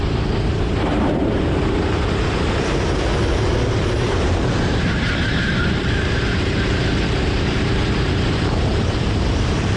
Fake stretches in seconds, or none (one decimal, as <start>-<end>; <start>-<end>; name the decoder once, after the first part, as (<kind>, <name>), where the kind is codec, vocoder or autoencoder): 0.0-3.1 (vocoder, BigVGAN v2); 3.7-9.8